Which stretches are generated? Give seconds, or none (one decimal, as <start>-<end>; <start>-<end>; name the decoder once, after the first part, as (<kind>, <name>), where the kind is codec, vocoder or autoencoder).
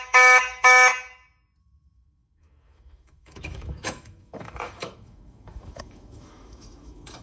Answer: 0.0-0.9 (autoencoder, DAC-VAE); 1.6-7.2